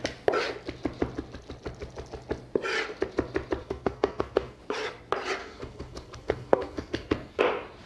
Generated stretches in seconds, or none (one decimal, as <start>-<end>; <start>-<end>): 3.6-4.6; 5.4-7.4

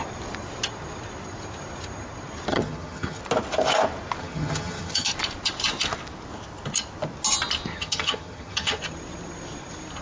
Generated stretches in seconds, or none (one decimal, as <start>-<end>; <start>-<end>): 2.5-3.2; 4.2-5.1; 7.7-8.8

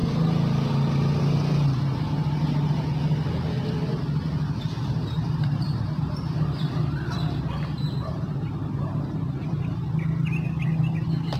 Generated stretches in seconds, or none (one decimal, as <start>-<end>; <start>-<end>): 4.8-9.8

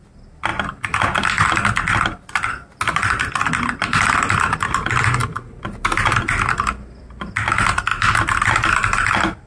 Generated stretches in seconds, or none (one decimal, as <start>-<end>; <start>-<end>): none